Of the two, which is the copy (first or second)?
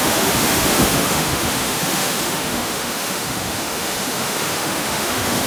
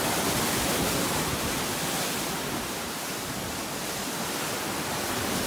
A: first